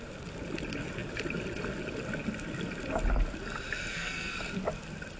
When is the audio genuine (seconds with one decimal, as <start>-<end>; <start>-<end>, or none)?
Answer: 0.0-3.9; 4.4-5.2